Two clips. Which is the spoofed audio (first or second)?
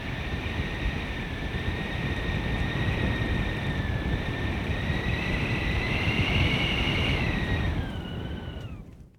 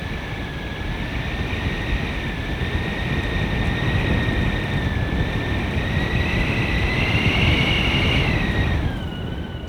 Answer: first